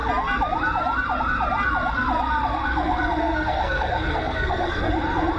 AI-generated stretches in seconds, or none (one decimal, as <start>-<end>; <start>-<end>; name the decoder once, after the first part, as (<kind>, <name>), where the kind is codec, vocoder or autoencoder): 3.2-4.9 (codec, SNAC)